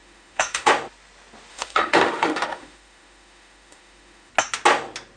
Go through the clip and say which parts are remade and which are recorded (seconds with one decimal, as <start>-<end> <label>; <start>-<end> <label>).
0.0-0.7 remade; 0.7-1.5 recorded; 1.5-4.3 remade; 4.3-5.2 recorded